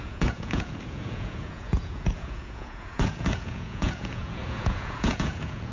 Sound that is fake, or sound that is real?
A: fake